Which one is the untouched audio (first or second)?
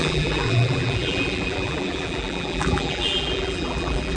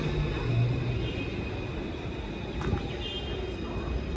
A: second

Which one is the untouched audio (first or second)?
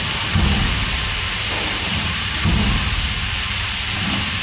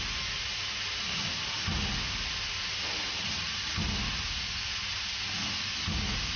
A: second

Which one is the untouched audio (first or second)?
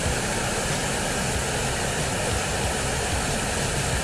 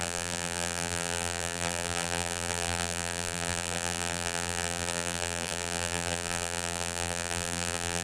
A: first